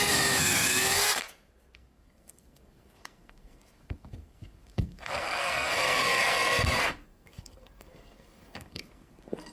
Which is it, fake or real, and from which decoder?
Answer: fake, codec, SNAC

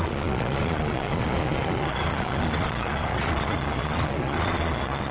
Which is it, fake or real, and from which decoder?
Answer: fake, vocoder, Vocos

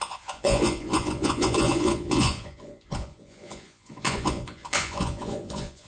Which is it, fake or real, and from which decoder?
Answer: fake, vocoder, Vocos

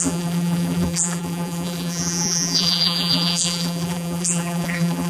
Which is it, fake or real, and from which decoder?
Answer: fake, vocoder, BigVGAN v2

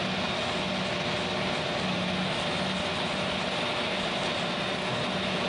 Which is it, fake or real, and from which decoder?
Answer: real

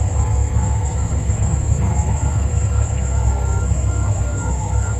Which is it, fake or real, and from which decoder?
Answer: fake, codec, SNAC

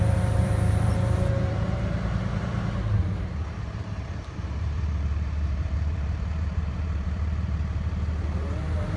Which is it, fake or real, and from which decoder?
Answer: fake, vocoder, BigVGAN v2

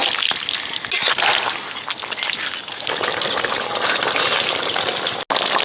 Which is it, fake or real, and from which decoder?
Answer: real